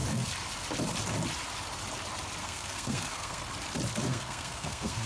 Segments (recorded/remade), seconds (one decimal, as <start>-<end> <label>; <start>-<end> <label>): 0.0-2.4 recorded; 2.4-3.4 remade; 3.4-4.1 recorded; 4.1-5.1 remade